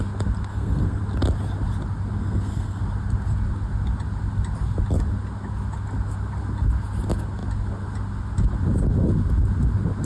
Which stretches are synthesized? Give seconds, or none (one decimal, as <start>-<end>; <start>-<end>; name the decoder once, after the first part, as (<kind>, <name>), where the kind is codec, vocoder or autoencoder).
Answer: 0.5-1.0 (codec, SNAC); 2.2-2.8